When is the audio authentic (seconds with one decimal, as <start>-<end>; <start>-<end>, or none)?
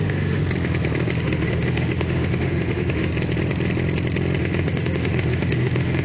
0.4-1.2; 3.1-4.4